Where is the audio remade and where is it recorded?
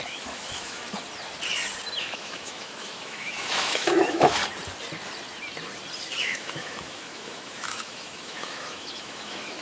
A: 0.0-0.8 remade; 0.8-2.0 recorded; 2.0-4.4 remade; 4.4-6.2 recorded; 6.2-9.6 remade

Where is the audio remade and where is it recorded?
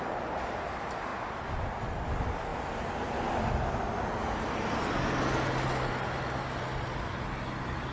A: 0.0-7.9 recorded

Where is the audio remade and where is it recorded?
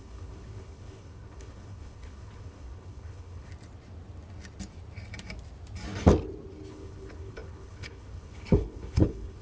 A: 0.0-3.5 remade; 3.5-6.7 recorded; 6.7-9.4 remade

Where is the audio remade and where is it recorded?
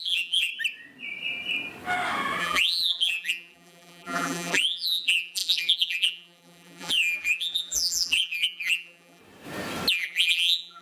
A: 0.0-0.5 remade; 0.5-2.4 recorded; 2.4-9.2 remade; 9.2-9.9 recorded; 9.9-10.8 remade